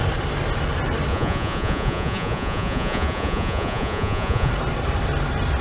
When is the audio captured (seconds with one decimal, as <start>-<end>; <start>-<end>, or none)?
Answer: 0.0-1.1; 4.5-5.6